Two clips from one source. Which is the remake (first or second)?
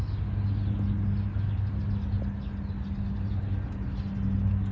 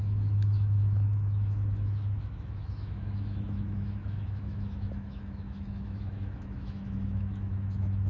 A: second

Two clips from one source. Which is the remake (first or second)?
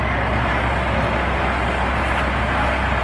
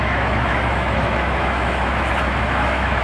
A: second